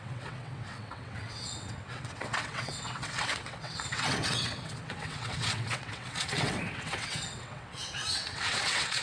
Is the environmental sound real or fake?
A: fake